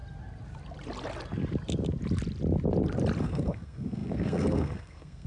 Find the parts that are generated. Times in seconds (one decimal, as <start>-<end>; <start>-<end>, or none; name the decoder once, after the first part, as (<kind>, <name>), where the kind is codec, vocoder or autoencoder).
3.2-5.3 (codec, SNAC)